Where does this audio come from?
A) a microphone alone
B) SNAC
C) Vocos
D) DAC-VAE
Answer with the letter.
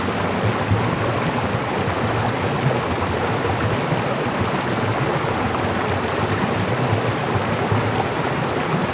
A